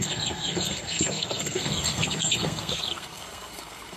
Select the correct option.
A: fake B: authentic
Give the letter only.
A